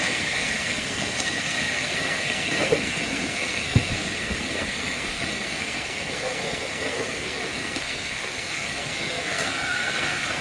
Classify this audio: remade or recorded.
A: remade